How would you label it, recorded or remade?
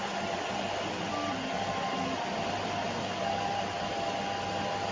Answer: recorded